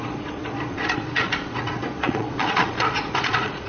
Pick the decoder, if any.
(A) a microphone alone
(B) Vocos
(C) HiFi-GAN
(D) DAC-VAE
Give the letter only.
B